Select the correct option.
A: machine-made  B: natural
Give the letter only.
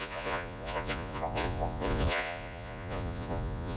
A